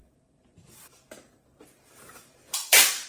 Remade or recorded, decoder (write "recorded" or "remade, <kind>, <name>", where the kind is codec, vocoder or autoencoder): remade, vocoder, BigVGAN v2